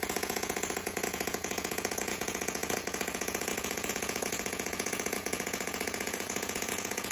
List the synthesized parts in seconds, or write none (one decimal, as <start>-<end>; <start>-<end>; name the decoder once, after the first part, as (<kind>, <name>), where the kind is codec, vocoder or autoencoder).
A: 0.0-7.1 (vocoder, Vocos)